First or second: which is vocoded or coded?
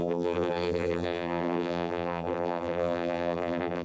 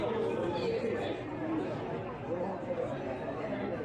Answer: first